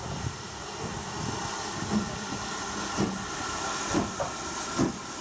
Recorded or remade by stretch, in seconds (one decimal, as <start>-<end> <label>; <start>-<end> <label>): 0.0-5.2 recorded